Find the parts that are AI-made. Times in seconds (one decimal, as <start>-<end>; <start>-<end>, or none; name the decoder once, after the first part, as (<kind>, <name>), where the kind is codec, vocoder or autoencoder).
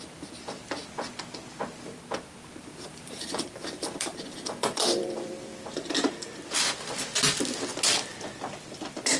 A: 2.6-5.9 (vocoder, BigVGAN v2)